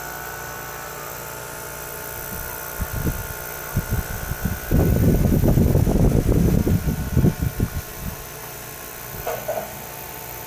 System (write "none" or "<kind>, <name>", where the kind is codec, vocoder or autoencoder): none